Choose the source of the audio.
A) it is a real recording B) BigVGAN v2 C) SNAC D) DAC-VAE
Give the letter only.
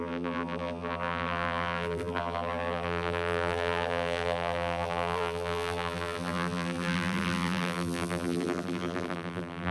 B